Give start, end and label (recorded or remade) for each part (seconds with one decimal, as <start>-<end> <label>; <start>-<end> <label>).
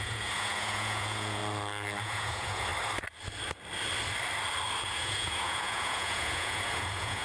0.0-1.4 remade; 1.4-2.0 recorded; 2.0-2.7 remade; 2.7-4.8 recorded; 4.8-7.2 remade